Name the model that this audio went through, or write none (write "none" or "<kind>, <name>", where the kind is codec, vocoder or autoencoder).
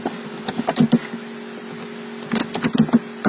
none